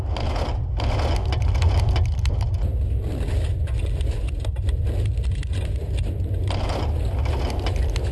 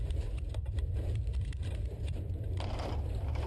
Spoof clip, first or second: second